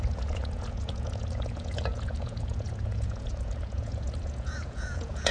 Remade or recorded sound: remade